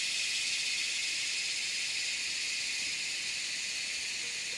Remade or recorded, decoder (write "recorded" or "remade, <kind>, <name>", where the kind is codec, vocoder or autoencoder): recorded